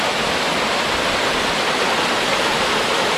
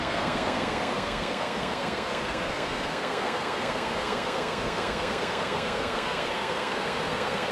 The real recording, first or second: first